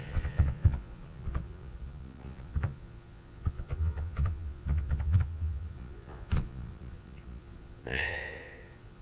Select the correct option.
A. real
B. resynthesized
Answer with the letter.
B